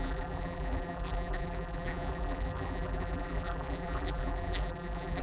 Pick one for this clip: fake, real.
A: fake